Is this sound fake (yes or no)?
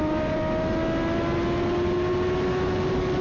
no